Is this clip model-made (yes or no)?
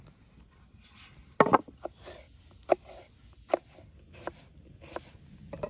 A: no